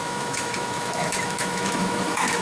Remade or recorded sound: remade